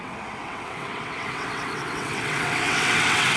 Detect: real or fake fake